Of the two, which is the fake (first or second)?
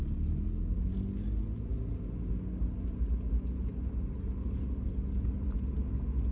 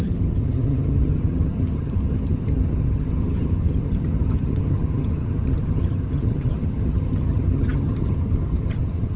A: second